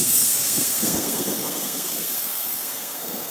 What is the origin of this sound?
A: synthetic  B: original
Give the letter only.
A